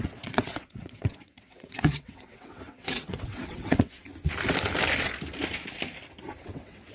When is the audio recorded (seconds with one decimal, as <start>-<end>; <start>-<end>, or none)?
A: 4.1-6.4